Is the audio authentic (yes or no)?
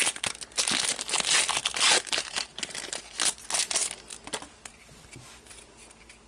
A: yes